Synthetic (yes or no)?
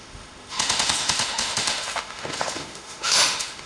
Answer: yes